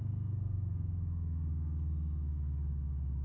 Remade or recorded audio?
remade